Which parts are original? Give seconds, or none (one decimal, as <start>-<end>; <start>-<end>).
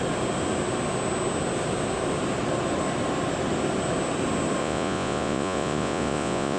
0.0-4.6